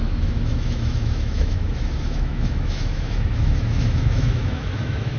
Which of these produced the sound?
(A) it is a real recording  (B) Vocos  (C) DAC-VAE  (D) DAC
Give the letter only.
C